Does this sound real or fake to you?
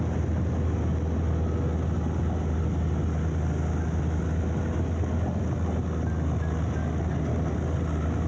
real